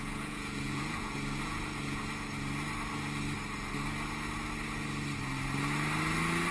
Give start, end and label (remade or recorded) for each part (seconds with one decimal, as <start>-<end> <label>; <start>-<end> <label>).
0.0-2.0 remade; 2.0-6.5 recorded